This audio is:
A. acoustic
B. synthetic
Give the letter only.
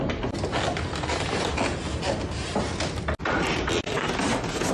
A